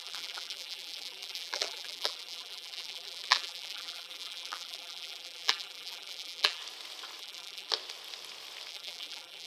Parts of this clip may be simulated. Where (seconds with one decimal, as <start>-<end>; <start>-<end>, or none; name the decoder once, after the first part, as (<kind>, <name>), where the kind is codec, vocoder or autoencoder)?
0.0-6.6 (vocoder, BigVGAN v2); 7.2-7.7; 8.7-9.5